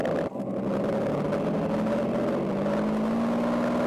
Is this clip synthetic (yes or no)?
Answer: no